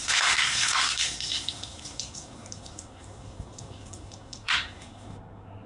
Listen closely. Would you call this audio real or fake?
fake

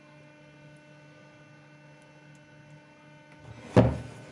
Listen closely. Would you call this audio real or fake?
real